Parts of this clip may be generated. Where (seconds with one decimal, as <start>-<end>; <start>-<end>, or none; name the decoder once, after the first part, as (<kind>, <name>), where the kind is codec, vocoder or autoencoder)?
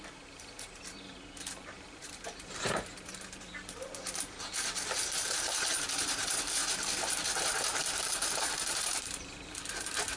0.0-10.2 (vocoder, BigVGAN v2)